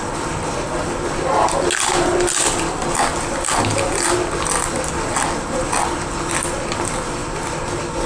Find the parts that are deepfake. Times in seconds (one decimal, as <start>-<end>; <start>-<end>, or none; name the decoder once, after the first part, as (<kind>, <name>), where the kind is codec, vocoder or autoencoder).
none